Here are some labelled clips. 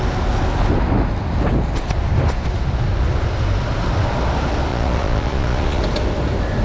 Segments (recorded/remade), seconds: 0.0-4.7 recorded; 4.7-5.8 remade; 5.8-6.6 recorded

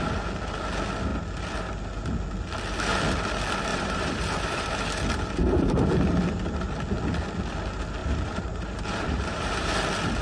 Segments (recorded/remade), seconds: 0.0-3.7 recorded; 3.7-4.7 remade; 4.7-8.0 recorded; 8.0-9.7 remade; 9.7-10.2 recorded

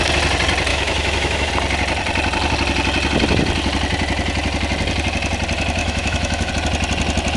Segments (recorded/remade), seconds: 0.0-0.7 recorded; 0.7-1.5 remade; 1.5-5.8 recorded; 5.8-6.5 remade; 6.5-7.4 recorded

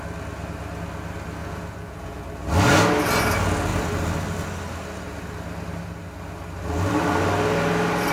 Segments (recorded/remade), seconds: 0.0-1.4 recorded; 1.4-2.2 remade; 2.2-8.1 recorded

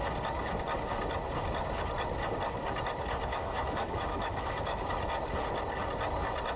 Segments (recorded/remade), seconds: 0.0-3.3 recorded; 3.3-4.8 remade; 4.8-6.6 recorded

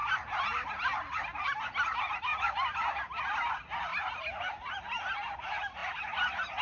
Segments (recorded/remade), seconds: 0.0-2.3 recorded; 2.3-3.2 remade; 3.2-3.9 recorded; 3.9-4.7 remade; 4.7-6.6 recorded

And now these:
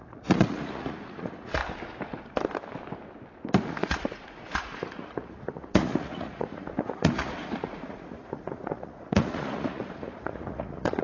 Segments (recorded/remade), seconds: 0.0-1.6 remade; 1.6-3.7 recorded; 3.7-11.0 remade